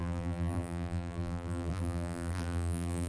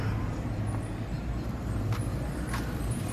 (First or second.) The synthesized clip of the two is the first